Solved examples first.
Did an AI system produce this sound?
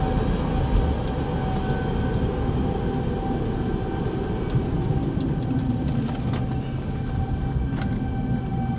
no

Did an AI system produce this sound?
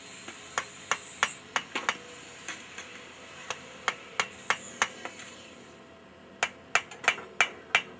no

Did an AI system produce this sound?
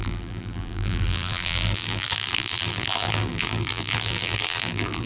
yes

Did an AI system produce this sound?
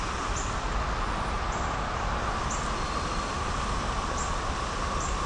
no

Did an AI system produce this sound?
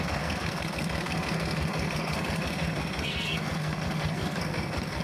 yes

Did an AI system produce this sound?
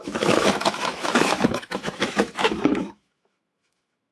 yes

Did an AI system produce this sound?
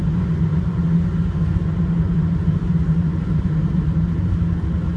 no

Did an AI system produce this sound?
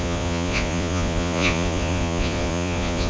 yes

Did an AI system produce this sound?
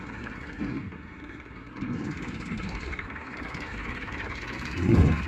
yes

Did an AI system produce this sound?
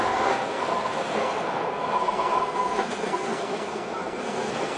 yes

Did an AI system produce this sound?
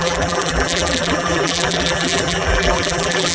yes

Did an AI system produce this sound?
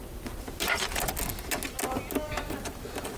no